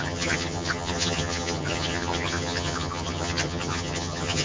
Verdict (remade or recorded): remade